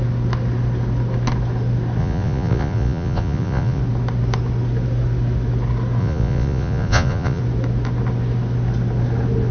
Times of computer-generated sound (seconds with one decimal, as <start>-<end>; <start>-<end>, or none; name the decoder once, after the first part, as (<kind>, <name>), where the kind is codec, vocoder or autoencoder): 2.0-3.8 (vocoder, Vocos); 6.0-7.4